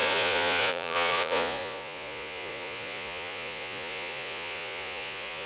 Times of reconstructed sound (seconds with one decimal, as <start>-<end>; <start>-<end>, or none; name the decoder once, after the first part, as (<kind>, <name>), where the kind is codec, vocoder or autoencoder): 0.0-5.5 (vocoder, Vocos)